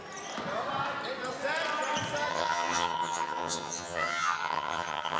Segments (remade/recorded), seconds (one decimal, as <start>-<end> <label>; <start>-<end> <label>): 0.0-2.3 recorded; 2.3-5.2 remade